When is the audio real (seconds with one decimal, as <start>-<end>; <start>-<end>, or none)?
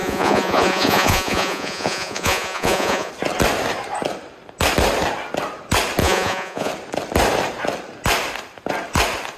3.1-6.0; 6.7-9.4